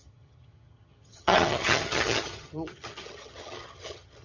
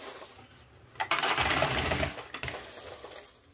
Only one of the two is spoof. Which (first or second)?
first